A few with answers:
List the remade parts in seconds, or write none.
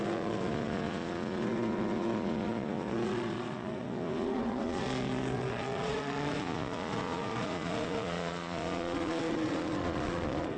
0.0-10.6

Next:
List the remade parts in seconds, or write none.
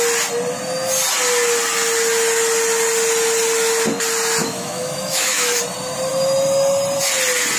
4.4-5.6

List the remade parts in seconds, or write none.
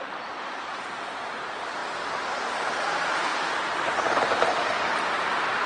0.0-5.7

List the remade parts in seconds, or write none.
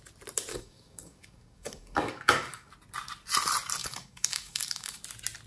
0.5-2.7; 3.8-5.0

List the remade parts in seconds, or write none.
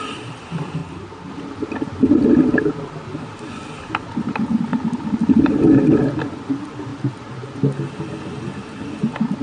none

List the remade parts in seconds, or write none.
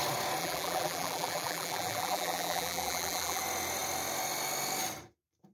0.4-3.4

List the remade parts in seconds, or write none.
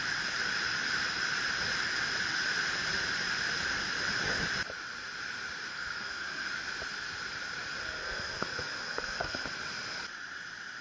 5.7-6.5; 7.8-9.5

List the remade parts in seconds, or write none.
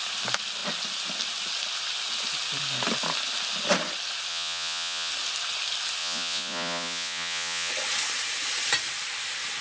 4.3-5.1; 6.0-7.7